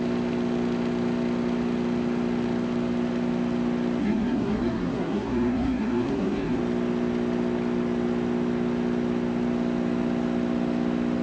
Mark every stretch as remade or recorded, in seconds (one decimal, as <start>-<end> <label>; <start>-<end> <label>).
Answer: 0.0-4.0 recorded; 4.0-6.6 remade; 6.6-11.2 recorded